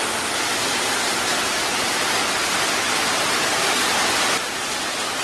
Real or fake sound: real